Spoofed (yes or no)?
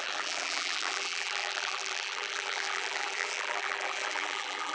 yes